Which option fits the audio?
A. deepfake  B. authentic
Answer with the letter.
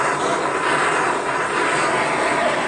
B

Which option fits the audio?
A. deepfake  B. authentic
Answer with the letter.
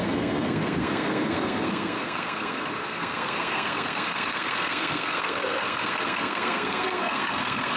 A